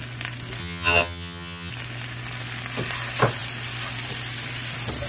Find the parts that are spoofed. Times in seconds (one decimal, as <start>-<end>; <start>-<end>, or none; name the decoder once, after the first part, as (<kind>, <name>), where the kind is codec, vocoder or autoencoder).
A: 0.6-1.7 (vocoder, HiFi-GAN)